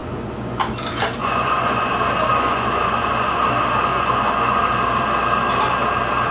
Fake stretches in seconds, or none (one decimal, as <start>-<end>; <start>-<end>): 0.0-0.6; 1.2-1.9; 2.3-3.4; 3.9-4.6